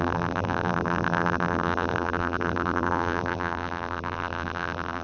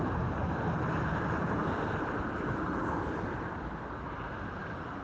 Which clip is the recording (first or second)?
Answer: second